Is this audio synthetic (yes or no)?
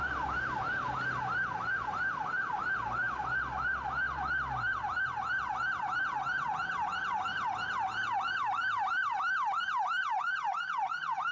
no